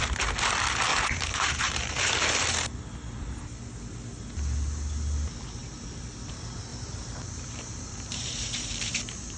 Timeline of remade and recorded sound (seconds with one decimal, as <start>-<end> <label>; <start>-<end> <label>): 0.0-0.9 recorded; 0.9-2.3 remade; 2.3-6.7 recorded; 6.7-9.4 remade